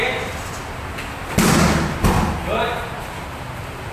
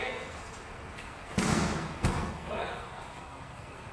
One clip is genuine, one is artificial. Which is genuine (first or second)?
first